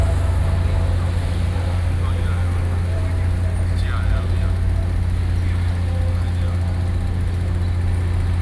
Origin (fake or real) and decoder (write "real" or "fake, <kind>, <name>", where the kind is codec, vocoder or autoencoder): real